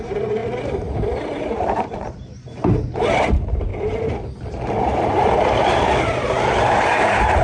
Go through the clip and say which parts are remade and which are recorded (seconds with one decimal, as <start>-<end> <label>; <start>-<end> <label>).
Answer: 0.0-7.4 remade